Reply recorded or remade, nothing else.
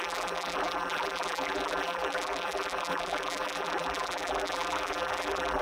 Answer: remade